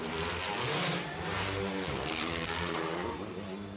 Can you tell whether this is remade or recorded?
recorded